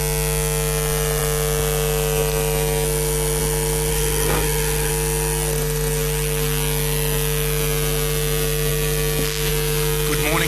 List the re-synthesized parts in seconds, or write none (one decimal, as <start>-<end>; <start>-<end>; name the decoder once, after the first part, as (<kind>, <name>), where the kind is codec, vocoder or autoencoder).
3.9-4.9 (codec, SNAC)